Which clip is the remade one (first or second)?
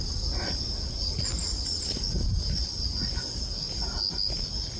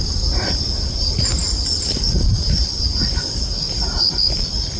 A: second